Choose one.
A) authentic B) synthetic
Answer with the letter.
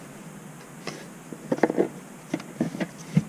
A